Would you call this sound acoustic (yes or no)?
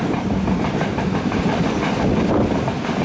yes